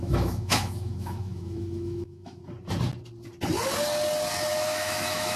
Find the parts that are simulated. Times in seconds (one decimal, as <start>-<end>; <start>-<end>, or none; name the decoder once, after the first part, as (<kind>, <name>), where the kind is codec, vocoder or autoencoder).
0.0-2.4 (autoencoder, DAC-VAE); 4.5-5.4